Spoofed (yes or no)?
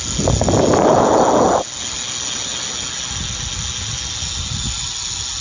no